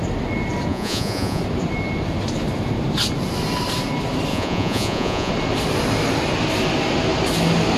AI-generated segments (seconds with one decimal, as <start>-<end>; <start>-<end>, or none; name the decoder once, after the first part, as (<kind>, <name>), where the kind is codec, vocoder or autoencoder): 0.7-1.4 (vocoder, Vocos); 4.3-5.3